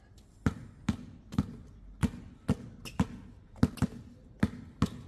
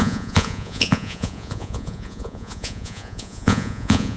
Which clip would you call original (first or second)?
first